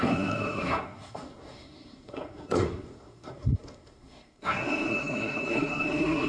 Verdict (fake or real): fake